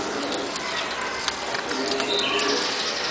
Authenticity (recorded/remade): recorded